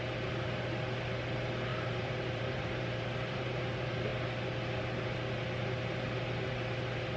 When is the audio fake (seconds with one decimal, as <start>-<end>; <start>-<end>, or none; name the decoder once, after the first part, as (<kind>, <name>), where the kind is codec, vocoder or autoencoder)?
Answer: 1.7-3.6 (vocoder, BigVGAN v2)